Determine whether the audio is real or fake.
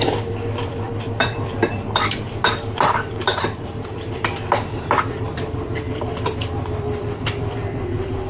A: fake